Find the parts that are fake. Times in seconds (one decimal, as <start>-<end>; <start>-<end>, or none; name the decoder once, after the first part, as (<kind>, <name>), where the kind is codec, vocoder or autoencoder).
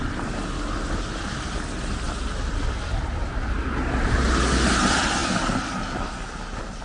none